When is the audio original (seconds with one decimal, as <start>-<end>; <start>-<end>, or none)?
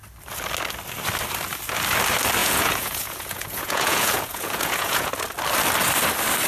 0.0-2.4; 5.1-6.5